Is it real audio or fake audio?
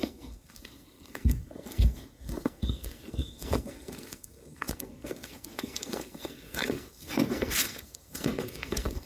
fake